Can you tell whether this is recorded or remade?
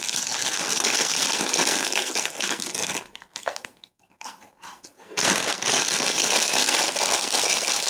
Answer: remade